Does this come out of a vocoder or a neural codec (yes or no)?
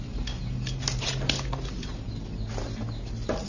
no